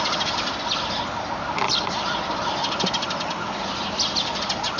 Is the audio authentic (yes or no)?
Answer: no